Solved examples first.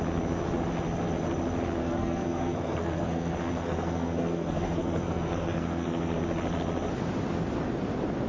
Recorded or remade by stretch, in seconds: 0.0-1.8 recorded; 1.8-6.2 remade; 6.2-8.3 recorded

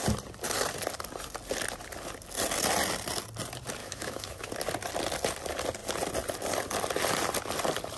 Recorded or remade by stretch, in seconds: 0.0-3.8 recorded; 3.8-4.5 remade; 4.5-8.0 recorded

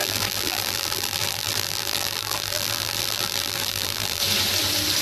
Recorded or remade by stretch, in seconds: 0.0-4.2 remade; 4.2-5.0 recorded

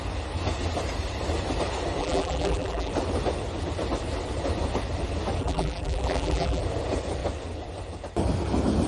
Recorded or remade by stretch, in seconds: 0.0-2.0 recorded; 2.0-2.9 remade; 2.9-5.4 recorded; 5.4-6.6 remade; 6.6-8.9 recorded

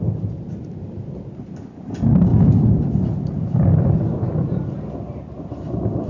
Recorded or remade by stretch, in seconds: 0.0-6.1 recorded